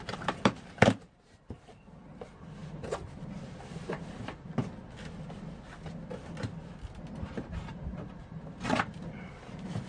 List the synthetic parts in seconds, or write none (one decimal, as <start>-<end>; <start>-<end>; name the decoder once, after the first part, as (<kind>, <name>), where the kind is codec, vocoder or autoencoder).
0.0-4.6 (vocoder, BigVGAN v2); 7.5-9.9